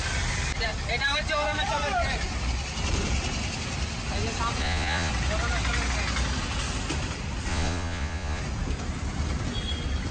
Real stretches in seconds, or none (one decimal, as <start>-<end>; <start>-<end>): 0.0-4.6; 5.1-7.5; 8.4-10.1